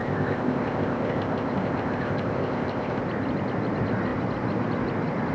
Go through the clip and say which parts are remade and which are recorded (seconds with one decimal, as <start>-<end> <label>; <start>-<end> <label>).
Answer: 0.0-3.0 remade; 3.0-5.3 recorded